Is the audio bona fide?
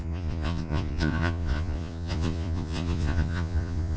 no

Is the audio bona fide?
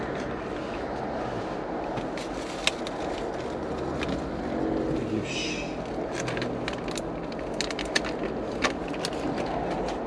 yes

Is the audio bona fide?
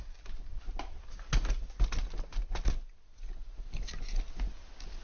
yes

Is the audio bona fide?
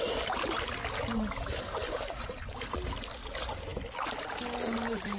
yes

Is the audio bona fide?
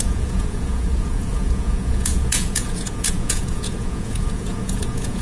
no